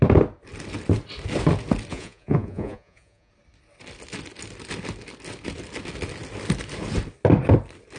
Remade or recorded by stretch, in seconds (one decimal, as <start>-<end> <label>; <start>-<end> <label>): 0.0-1.9 recorded; 1.9-3.3 remade; 3.3-8.0 recorded